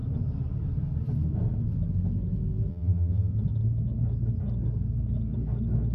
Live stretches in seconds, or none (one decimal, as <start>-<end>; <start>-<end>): 0.0-2.7; 3.3-5.9